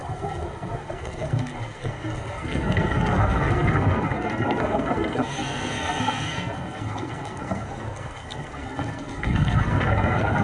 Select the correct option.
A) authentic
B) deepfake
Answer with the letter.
B